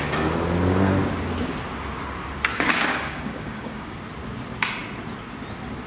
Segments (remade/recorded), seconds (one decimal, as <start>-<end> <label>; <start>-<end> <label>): 0.0-2.5 recorded; 2.5-4.0 remade; 4.0-5.9 recorded